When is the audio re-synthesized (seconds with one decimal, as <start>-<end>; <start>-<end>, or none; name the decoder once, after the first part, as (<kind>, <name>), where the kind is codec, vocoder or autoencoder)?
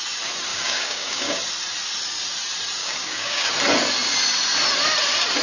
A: 0.5-1.4 (codec, DAC); 2.8-3.5